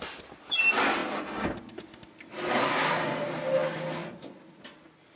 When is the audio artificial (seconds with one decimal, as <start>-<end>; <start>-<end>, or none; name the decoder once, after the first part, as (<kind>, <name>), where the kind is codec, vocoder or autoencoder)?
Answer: none